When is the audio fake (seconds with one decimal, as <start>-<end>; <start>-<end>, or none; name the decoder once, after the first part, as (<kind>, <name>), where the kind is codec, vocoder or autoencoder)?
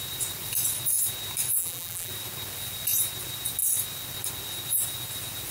1.6-2.1 (vocoder, BigVGAN v2)